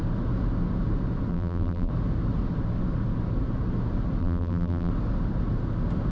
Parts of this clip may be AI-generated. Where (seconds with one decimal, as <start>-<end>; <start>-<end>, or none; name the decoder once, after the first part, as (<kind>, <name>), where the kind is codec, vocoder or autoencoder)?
1.3-1.9 (vocoder, BigVGAN v2); 4.2-4.9